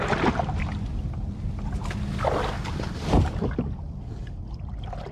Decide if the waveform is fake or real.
real